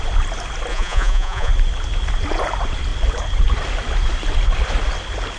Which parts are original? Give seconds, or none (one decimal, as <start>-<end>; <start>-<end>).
0.0-0.7; 1.5-5.4